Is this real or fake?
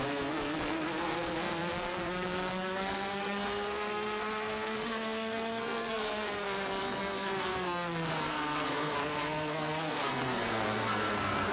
fake